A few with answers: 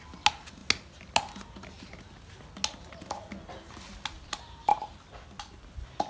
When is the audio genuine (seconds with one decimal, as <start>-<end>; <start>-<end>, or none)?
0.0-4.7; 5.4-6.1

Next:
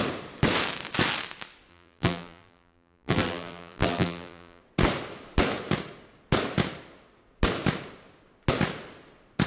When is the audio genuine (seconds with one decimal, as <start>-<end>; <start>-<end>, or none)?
0.0-1.7; 4.6-9.5

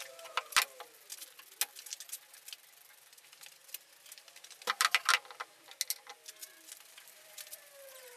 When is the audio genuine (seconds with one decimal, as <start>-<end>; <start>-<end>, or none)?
0.0-8.2